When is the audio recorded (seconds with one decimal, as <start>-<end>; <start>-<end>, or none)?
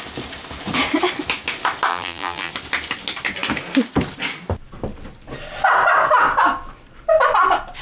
0.0-1.9; 2.5-7.8